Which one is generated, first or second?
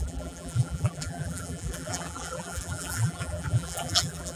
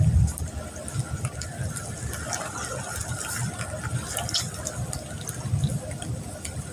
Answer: first